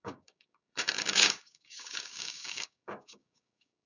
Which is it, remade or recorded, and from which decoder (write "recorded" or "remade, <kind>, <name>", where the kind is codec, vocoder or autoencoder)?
remade, codec, DAC